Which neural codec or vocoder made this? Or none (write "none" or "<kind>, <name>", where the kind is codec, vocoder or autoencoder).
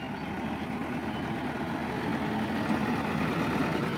none